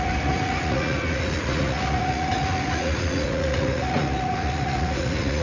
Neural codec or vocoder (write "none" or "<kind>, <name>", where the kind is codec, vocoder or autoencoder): vocoder, Vocos